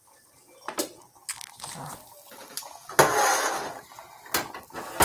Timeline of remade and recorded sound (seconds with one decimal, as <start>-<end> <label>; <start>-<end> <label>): 0.0-5.0 recorded